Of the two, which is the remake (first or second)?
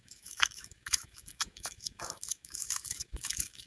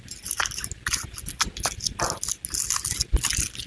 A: first